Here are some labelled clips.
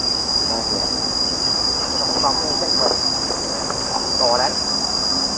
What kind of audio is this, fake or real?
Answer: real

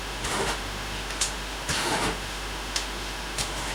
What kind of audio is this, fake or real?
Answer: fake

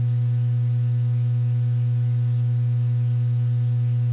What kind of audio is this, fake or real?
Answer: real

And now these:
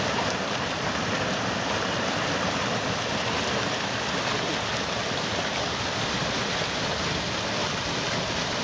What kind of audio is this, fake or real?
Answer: real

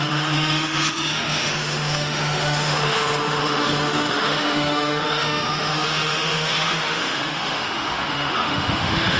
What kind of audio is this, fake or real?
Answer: fake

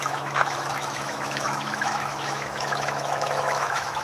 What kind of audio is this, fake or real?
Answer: fake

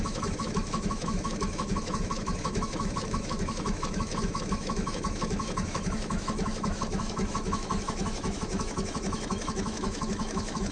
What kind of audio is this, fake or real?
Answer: fake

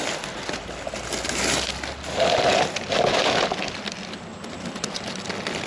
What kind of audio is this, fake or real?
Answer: real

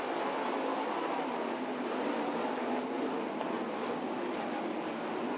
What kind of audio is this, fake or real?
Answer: real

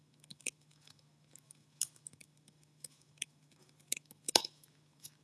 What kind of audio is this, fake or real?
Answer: fake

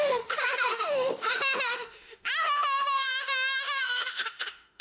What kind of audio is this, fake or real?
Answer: fake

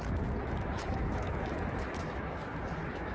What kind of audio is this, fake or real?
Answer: fake